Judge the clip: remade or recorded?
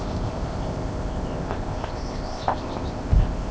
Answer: remade